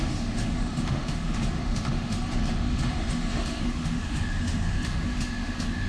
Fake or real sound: fake